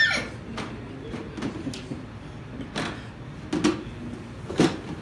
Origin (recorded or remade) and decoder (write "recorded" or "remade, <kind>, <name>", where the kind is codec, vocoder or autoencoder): recorded